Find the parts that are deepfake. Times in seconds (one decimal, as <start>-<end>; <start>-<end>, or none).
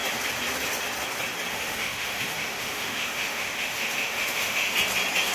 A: 1.5-4.7